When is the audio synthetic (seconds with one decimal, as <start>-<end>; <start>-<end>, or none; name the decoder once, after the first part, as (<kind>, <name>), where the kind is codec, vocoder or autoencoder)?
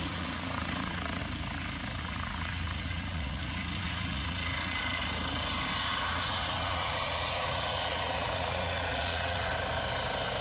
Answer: 0.0-1.2 (vocoder, Vocos); 2.0-5.0; 5.8-9.5